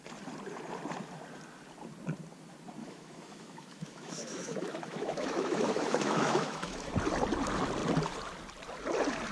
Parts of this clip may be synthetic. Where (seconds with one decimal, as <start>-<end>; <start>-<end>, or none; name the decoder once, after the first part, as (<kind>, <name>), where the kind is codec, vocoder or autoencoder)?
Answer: 2.8-6.9 (autoencoder, DAC-VAE)